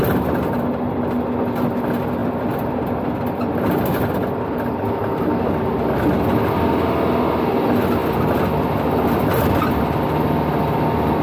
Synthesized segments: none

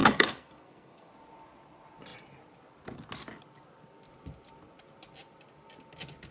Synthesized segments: 0.0-1.1 (codec, SNAC)

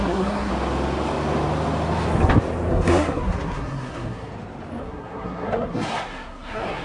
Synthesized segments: 0.0-0.5 (codec, SNAC); 2.7-4.3; 4.8-6.8

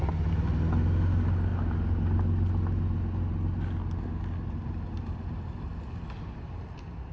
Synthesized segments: none

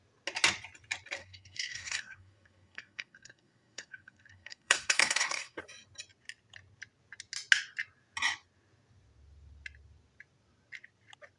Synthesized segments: 1.2-5.6 (codec, SNAC)

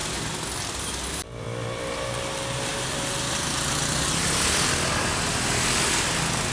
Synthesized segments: none

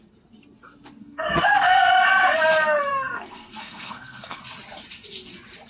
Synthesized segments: 1.0-1.9 (codec, SNAC); 2.9-4.4

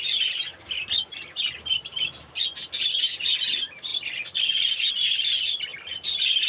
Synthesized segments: none